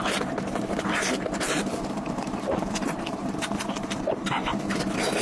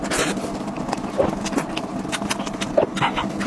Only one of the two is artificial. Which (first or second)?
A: first